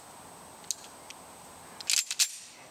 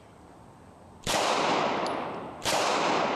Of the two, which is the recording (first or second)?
first